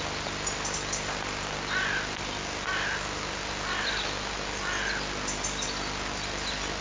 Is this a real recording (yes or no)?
yes